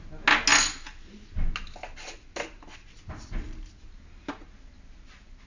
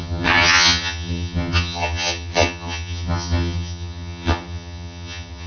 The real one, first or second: first